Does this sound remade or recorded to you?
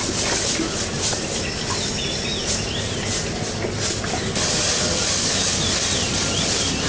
recorded